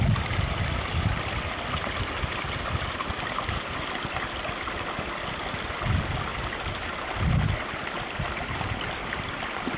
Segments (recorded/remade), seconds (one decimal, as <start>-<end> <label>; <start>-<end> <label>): 0.0-9.8 recorded